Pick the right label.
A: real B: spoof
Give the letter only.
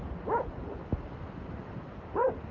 A